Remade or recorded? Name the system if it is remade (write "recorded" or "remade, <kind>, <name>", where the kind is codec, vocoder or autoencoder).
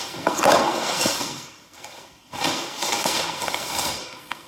remade, codec, SNAC